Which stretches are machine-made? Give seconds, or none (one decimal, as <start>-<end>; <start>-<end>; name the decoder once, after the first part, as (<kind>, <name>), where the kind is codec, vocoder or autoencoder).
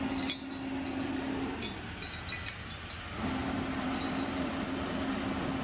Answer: 2.0-3.0 (vocoder, BigVGAN v2); 3.4-5.1